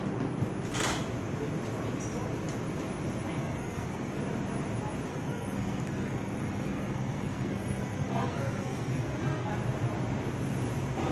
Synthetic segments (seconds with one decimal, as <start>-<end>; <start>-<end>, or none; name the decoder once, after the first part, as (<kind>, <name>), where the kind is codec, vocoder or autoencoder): 3.4-4.2 (codec, SNAC); 5.1-9.5